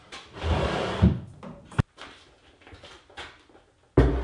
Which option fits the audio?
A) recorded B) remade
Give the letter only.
A